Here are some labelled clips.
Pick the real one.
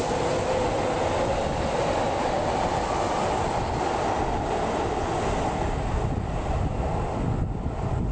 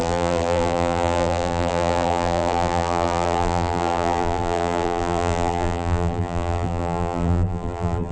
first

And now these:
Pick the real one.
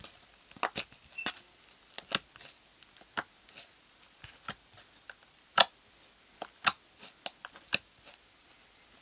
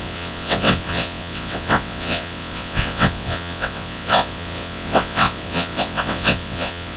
first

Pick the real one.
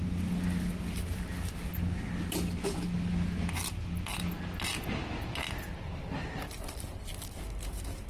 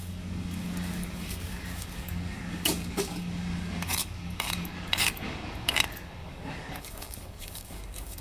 first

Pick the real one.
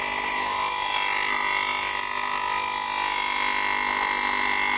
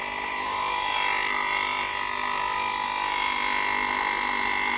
first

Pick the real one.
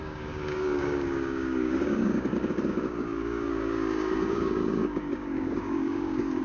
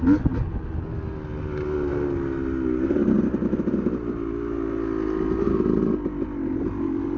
second